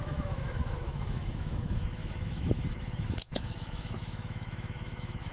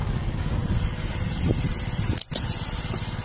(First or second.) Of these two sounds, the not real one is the first